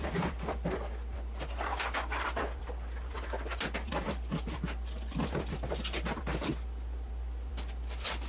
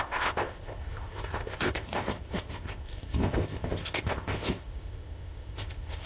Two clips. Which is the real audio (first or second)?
first